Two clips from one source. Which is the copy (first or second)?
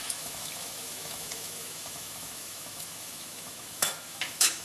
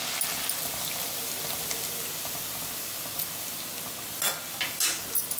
first